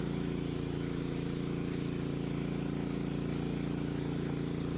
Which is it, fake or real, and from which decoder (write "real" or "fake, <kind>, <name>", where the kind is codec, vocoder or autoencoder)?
real